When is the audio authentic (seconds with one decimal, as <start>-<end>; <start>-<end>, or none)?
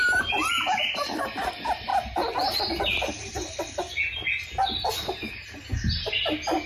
0.0-6.7